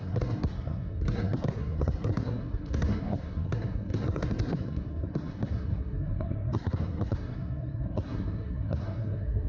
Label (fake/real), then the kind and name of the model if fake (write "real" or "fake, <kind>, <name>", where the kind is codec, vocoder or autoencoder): fake, codec, SNAC